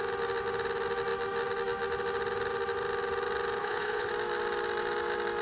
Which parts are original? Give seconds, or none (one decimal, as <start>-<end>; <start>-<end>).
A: 0.0-3.6; 4.1-5.4